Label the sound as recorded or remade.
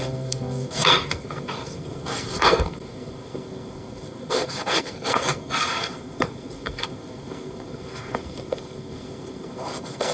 remade